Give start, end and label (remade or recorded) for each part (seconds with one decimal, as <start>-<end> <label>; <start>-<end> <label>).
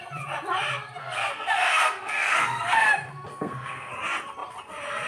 0.0-1.0 recorded; 1.0-2.9 remade; 2.9-3.3 recorded; 3.3-3.9 remade; 3.9-5.1 recorded